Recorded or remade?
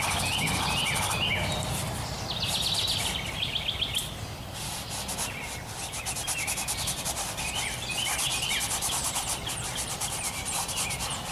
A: recorded